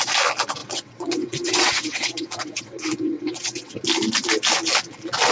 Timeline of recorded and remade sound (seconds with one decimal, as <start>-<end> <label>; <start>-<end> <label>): 0.0-0.6 recorded; 0.6-3.8 remade; 3.8-5.3 recorded